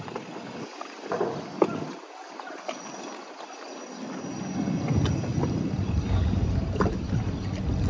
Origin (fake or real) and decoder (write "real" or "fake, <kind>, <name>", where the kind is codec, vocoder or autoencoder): real